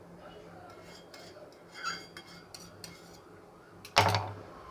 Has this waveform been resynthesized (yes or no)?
no